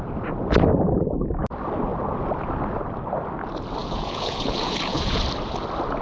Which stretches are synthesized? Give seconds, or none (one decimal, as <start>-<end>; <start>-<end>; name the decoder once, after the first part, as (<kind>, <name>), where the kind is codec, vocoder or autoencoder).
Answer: 3.8-5.2 (vocoder, Vocos)